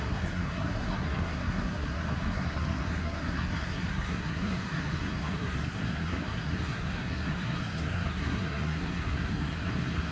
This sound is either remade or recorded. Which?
remade